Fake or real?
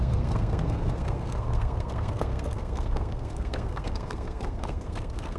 fake